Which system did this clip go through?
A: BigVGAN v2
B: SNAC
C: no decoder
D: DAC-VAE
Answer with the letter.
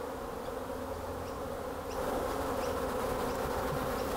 C